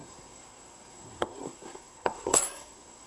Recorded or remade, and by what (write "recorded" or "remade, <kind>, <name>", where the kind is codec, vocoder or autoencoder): remade, codec, SNAC